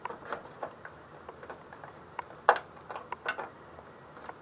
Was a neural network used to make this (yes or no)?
no